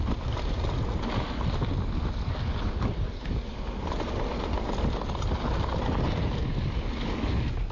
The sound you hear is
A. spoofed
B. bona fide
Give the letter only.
B